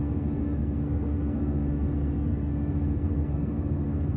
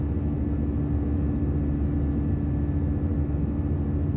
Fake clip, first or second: first